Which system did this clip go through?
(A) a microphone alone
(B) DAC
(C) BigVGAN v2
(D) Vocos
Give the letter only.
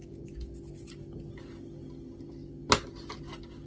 A